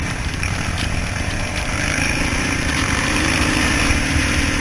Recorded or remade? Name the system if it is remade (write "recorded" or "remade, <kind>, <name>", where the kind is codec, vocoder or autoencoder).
remade, vocoder, BigVGAN v2